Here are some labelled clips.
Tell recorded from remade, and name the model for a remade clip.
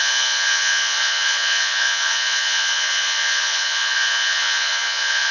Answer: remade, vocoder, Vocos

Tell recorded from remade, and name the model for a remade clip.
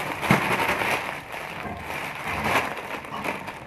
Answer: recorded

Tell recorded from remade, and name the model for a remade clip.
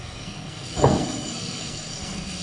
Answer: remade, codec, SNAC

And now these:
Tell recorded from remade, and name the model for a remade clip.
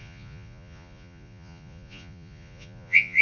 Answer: remade, vocoder, Vocos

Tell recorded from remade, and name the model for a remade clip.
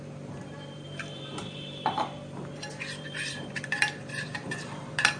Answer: remade, vocoder, BigVGAN v2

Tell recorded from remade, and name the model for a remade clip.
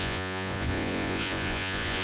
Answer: remade, vocoder, Vocos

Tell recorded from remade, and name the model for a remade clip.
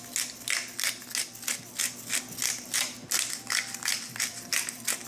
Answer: recorded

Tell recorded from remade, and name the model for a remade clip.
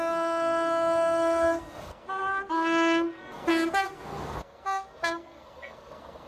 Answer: remade, codec, SNAC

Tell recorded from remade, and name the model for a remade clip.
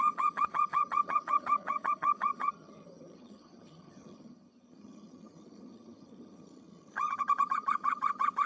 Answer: remade, vocoder, HiFi-GAN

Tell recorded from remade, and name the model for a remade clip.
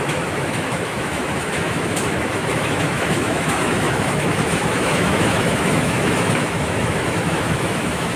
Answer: remade, autoencoder, DAC-VAE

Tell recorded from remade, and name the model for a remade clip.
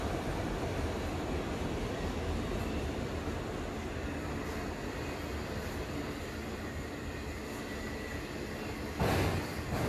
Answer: recorded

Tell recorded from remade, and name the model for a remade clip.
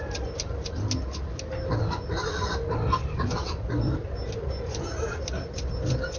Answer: recorded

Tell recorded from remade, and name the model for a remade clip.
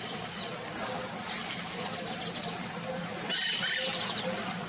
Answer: recorded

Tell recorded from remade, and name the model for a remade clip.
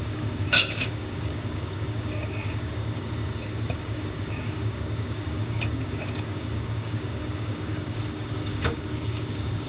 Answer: remade, codec, DAC